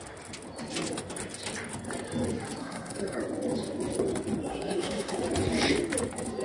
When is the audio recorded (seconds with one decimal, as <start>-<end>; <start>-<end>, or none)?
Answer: 0.0-2.6; 3.2-4.5; 5.2-6.4